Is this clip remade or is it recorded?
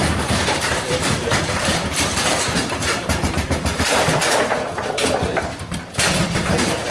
remade